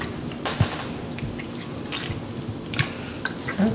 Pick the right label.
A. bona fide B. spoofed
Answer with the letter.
A